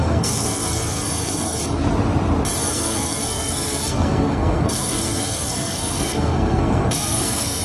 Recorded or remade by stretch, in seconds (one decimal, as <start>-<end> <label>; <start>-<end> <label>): 0.0-1.6 remade; 1.6-2.6 recorded; 2.6-7.6 remade